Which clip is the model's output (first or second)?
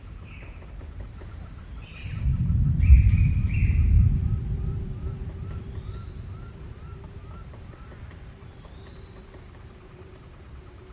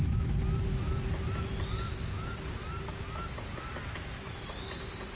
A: first